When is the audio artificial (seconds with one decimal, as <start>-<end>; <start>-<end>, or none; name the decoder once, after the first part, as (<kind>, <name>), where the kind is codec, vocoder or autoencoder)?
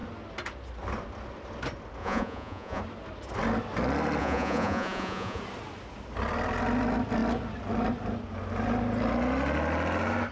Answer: 2.0-2.8 (vocoder, Vocos); 4.2-5.4